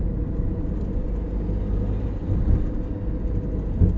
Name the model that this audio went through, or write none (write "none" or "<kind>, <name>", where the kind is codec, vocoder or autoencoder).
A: none